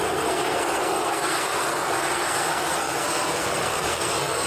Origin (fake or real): fake